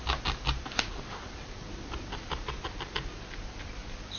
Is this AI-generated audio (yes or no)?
no